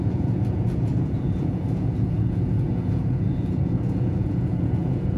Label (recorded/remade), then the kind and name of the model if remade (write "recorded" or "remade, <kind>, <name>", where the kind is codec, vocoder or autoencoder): remade, vocoder, Vocos